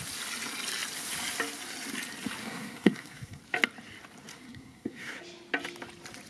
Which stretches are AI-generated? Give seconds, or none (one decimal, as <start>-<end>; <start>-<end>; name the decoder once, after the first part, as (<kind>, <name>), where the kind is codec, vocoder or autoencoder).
2.4-3.4 (codec, SNAC); 4.3-5.2

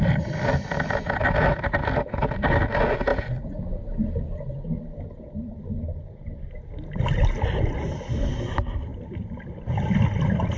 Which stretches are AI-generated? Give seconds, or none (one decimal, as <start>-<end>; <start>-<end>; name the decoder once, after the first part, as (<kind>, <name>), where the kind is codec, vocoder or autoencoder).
none

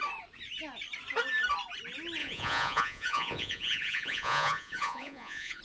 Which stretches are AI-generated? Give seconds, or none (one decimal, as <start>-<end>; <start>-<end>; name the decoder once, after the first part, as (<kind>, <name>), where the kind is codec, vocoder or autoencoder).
2.2-5.6 (vocoder, Vocos)

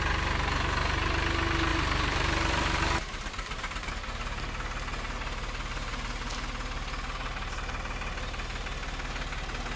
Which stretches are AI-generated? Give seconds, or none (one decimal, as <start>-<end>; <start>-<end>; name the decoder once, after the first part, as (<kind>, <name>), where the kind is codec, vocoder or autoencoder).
1.7-3.9 (vocoder, BigVGAN v2)

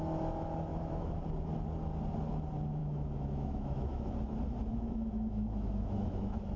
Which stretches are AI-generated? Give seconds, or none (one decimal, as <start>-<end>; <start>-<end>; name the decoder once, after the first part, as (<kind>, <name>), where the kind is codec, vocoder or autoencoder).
0.7-1.2 (autoencoder, DAC-VAE); 2.8-4.1; 4.7-6.6

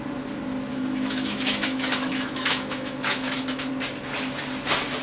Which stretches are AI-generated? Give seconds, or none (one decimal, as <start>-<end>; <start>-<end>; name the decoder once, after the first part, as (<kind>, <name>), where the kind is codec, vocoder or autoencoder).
0.7-3.7 (autoencoder, DAC-VAE)

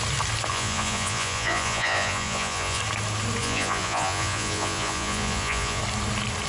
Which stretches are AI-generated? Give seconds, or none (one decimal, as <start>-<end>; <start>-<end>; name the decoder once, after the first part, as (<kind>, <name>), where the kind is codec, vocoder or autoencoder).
0.5-2.8 (vocoder, Vocos); 3.4-5.8

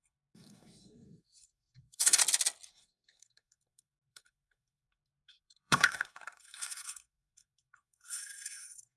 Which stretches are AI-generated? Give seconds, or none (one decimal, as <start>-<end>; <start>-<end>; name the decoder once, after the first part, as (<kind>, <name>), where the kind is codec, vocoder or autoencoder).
0.0-2.2 (codec, SNAC); 2.7-9.0